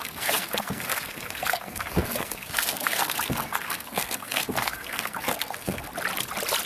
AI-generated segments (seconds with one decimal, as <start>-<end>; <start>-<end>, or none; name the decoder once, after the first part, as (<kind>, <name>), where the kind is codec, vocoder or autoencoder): 0.0-5.9 (codec, SNAC)